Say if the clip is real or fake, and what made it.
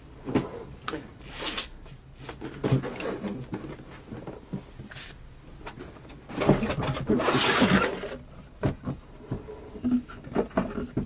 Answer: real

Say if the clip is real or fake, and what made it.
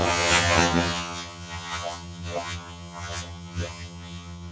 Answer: fake, vocoder, HiFi-GAN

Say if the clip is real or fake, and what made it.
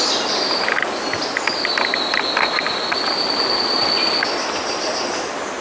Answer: real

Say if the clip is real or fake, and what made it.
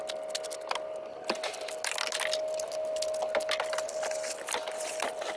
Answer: real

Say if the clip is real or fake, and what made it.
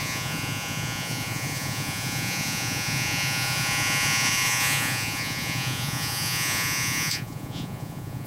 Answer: fake, vocoder, Vocos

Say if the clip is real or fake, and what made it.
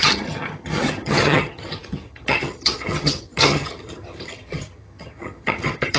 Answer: fake, vocoder, HiFi-GAN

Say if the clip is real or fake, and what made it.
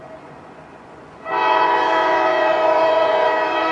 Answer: fake, vocoder, Vocos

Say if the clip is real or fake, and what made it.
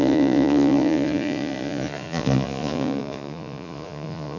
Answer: fake, vocoder, Vocos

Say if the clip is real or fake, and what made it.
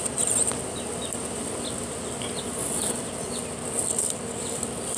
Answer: real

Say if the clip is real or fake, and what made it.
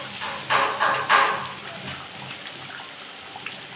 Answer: real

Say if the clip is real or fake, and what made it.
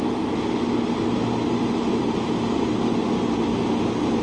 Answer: real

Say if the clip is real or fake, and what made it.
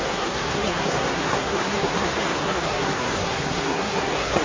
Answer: fake, codec, SNAC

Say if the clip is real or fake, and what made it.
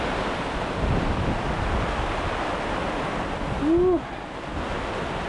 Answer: real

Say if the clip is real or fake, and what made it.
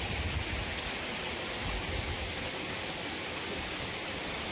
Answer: real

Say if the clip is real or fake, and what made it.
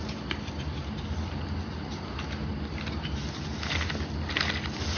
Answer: real